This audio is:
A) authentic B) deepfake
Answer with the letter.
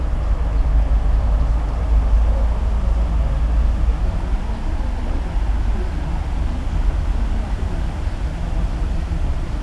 A